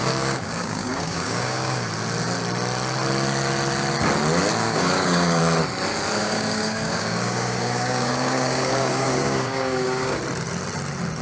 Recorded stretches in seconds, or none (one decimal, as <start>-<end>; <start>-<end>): 1.9-4.6; 5.4-6.2; 10.2-11.2